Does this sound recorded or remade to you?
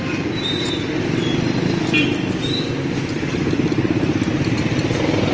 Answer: recorded